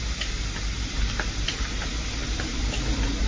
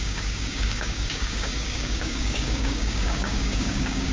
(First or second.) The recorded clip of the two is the first